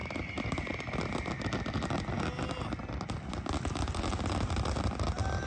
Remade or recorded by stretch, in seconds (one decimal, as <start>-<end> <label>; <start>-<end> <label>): 0.0-5.5 recorded